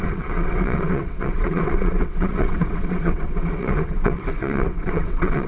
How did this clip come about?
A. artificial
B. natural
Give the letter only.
A